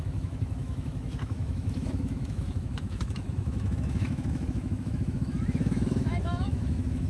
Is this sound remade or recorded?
remade